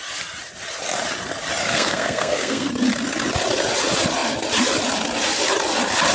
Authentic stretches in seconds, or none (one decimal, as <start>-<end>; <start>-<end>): 0.0-1.6; 2.7-6.1